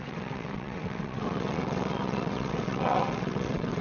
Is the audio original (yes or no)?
no